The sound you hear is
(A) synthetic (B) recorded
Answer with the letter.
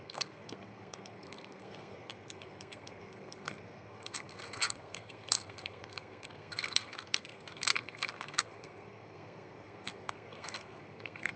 A